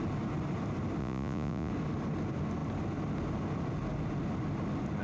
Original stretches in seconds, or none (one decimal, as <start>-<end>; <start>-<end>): 0.0-1.0; 1.7-5.0